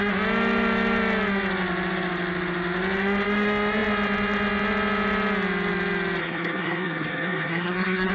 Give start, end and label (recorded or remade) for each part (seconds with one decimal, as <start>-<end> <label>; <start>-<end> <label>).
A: 0.0-6.2 recorded; 6.2-8.1 remade